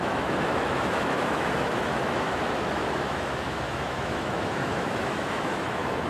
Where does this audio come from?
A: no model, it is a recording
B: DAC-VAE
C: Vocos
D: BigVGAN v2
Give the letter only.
B